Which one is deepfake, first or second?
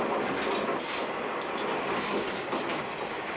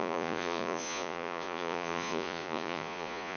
second